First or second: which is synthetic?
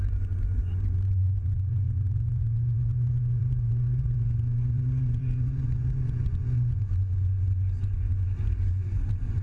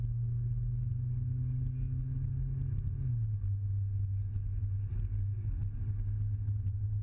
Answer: first